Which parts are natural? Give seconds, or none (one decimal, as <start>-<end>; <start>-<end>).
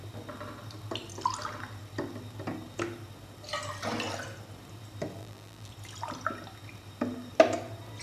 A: 0.0-5.2; 5.7-8.0